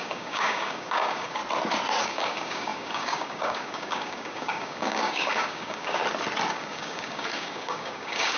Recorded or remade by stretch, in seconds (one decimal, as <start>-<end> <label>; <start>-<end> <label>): 0.0-1.4 remade; 1.4-2.0 recorded; 2.0-6.0 remade; 6.0-6.5 recorded; 6.5-8.4 remade